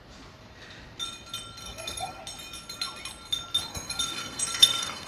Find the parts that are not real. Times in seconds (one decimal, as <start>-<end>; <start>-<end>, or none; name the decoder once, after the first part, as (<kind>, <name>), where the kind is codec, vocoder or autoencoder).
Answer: 1.6-2.2 (codec, SNAC); 3.7-5.1